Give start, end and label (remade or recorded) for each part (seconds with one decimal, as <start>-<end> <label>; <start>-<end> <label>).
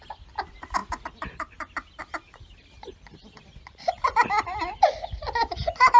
0.0-6.0 recorded